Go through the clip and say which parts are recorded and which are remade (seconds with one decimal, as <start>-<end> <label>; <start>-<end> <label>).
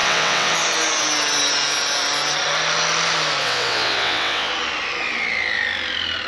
0.0-0.5 remade; 0.5-3.4 recorded; 3.4-4.5 remade; 4.5-6.3 recorded